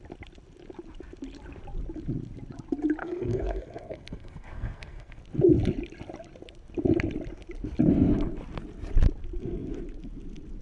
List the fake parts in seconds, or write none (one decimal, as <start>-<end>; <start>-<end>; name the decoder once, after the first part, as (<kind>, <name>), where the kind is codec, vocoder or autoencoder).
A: 3.0-5.2 (codec, SNAC)